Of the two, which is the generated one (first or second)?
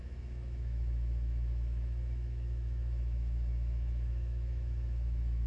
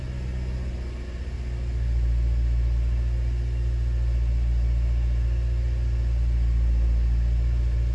first